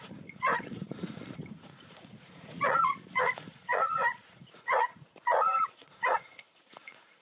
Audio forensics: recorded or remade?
remade